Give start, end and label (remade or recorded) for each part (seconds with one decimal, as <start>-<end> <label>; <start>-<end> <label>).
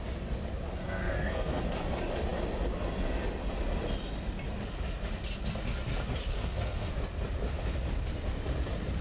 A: 0.0-0.8 recorded; 0.8-1.6 remade; 1.6-6.3 recorded; 6.3-6.9 remade; 6.9-9.0 recorded